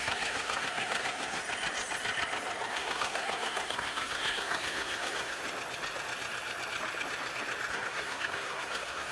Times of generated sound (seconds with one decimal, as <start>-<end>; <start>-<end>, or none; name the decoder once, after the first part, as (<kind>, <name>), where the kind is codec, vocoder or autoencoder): 0.0-1.4 (codec, SNAC); 2.7-5.4; 7.7-9.1